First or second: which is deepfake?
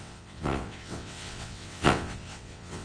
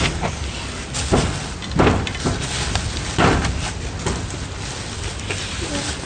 first